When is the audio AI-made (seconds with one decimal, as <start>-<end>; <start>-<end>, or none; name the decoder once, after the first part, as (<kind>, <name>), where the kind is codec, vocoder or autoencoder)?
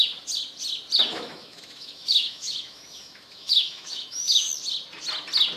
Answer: 1.1-4.5 (autoencoder, DAC-VAE)